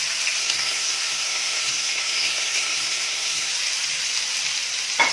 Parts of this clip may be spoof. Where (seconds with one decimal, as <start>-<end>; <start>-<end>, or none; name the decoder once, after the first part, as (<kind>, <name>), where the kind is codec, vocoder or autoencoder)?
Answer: 0.4-3.5 (codec, SNAC)